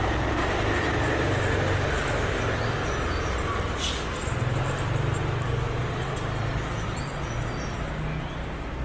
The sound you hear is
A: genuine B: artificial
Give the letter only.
A